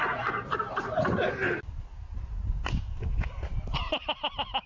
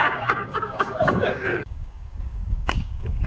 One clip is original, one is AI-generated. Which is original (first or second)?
first